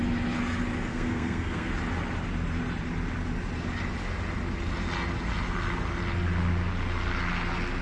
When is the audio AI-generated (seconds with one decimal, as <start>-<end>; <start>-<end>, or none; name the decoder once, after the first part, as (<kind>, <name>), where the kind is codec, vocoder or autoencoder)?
0.9-1.7 (codec, SNAC)